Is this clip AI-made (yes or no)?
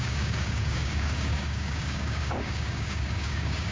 yes